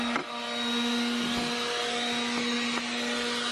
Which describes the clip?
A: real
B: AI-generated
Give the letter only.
A